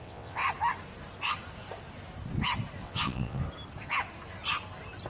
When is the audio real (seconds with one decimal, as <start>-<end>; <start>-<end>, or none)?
0.4-2.8; 3.4-5.1

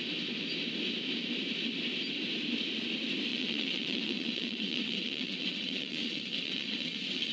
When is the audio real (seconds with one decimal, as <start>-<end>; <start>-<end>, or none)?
0.0-3.3